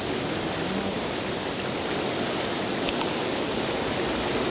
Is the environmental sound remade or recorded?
recorded